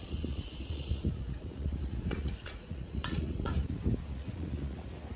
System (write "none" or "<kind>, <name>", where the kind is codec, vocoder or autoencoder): vocoder, Vocos